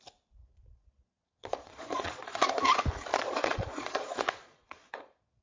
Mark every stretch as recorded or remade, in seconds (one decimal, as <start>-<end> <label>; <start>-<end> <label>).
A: 0.0-0.4 recorded; 0.4-2.5 remade; 2.5-3.1 recorded; 3.1-5.4 remade